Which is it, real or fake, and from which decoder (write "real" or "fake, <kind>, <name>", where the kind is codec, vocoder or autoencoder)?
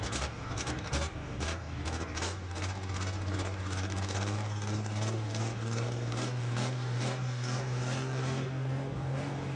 fake, codec, DAC